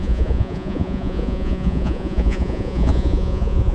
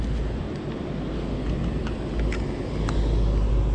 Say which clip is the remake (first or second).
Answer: first